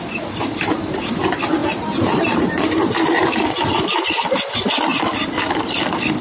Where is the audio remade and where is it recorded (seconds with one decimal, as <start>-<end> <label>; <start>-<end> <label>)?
0.0-0.5 recorded; 0.5-1.2 remade; 1.2-1.6 recorded; 1.6-3.3 remade; 3.3-6.2 recorded